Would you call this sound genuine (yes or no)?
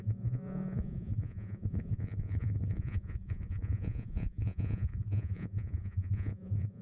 no